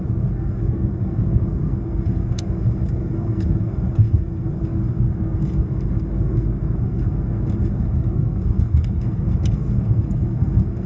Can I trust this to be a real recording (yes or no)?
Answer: no